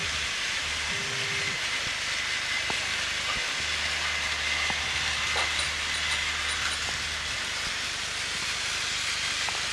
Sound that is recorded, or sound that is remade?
recorded